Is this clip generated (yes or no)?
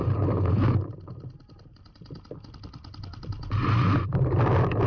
no